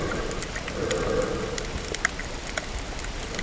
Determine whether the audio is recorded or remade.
recorded